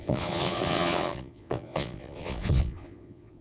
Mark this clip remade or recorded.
remade